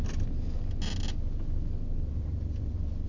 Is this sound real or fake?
real